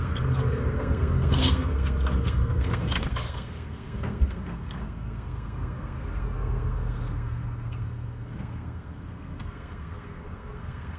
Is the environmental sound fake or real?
fake